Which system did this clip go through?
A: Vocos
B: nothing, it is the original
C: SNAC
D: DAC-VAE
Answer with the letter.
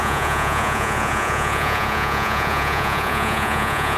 A